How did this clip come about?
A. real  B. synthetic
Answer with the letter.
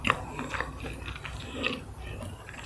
A